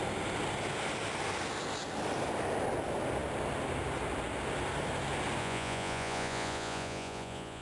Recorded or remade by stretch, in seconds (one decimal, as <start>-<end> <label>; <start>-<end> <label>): 0.0-5.4 recorded; 5.4-7.6 remade